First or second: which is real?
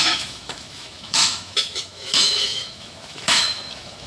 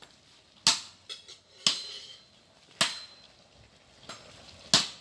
second